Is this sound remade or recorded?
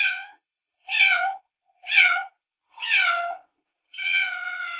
remade